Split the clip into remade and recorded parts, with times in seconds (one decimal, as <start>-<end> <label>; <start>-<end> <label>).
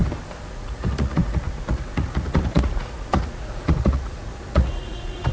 0.0-0.5 recorded; 0.5-5.3 remade